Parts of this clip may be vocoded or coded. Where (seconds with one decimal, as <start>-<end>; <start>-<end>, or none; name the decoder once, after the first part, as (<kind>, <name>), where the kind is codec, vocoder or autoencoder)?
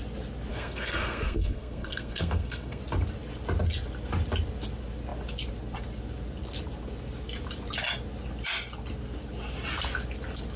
0.5-2.8 (codec, SNAC)